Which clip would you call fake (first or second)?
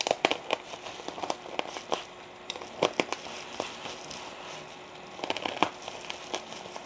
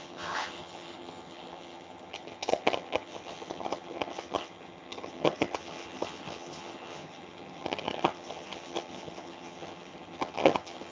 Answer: second